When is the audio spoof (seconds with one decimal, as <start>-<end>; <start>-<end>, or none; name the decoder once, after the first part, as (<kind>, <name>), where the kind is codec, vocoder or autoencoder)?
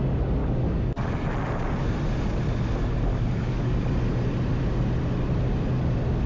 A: 0.4-1.1 (codec, DAC); 3.1-3.8